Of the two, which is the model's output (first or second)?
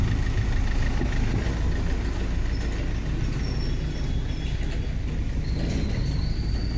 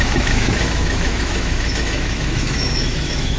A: second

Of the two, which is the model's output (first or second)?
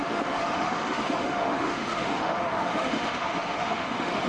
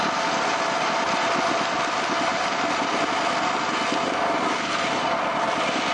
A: first